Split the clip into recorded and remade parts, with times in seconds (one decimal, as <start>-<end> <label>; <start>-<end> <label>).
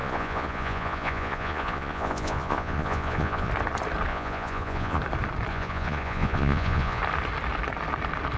0.0-3.5 remade; 3.5-4.1 recorded; 4.1-5.0 remade; 5.0-5.5 recorded; 5.5-7.0 remade; 7.0-8.4 recorded